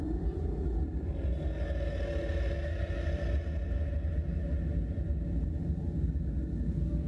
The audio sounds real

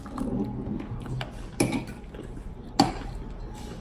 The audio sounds real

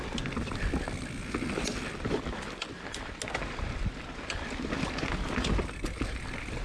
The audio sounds real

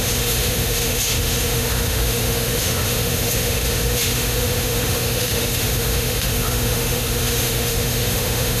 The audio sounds fake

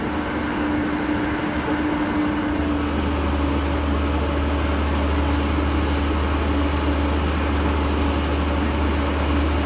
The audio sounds real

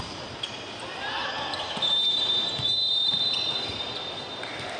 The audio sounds real